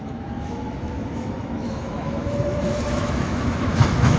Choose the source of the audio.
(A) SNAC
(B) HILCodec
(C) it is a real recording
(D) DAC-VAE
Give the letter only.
D